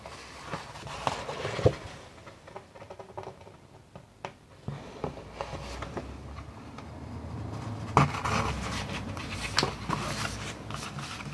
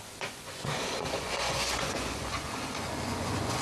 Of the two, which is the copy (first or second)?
second